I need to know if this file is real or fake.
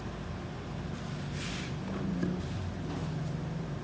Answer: real